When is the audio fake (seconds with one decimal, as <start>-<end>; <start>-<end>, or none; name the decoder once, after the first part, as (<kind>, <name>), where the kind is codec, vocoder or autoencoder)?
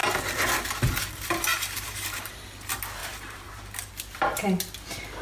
1.5-2.4 (vocoder, BigVGAN v2); 3.0-3.9